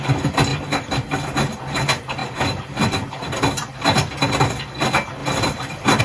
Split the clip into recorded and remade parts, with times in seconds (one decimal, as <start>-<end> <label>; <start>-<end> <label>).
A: 0.0-0.5 recorded; 0.5-1.2 remade; 1.2-5.2 recorded; 5.2-6.0 remade